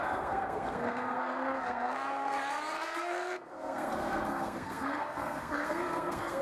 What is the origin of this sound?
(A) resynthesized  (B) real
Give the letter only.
A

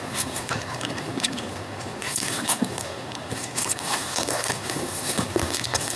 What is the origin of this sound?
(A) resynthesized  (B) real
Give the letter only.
A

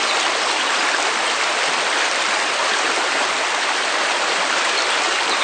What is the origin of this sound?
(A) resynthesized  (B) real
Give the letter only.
A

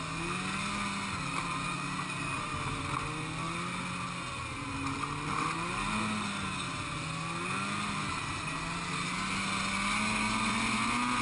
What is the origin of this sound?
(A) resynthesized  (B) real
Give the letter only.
B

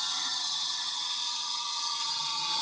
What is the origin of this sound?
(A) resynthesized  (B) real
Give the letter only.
A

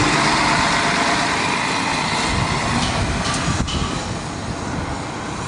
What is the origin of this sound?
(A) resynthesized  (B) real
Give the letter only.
B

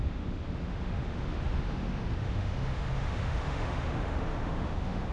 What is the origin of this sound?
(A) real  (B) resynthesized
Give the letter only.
B